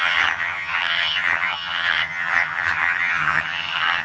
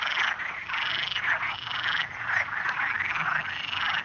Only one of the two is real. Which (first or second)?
second